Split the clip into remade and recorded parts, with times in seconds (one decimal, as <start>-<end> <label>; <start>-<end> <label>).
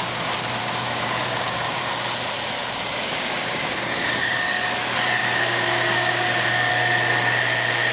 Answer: 0.0-0.6 recorded; 0.6-1.8 remade; 1.8-2.6 recorded; 2.6-4.5 remade; 4.5-5.2 recorded; 5.2-6.7 remade; 6.7-7.9 recorded